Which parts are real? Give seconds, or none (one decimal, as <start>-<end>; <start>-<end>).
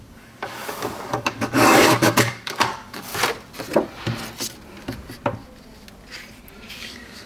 3.1-6.7